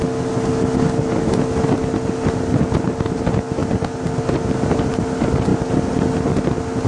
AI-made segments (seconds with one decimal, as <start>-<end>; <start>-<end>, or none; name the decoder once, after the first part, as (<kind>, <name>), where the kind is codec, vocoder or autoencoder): none